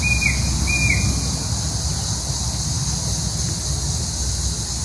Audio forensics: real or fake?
real